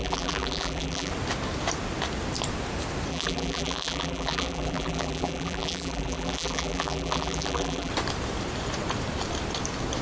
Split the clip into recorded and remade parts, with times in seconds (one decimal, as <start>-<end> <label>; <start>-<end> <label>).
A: 0.0-1.1 remade; 1.1-3.1 recorded; 3.1-7.9 remade; 7.9-10.0 recorded